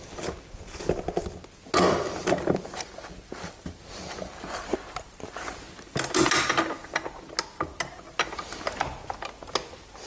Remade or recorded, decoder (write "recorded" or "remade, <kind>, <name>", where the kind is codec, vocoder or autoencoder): recorded